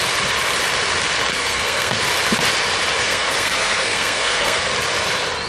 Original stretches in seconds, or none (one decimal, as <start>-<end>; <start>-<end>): 0.0-1.3; 2.0-3.0; 4.7-5.5